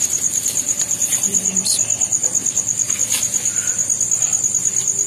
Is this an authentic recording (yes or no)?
yes